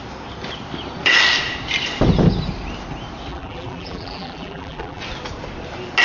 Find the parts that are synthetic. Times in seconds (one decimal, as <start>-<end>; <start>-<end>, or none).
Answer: 3.3-5.0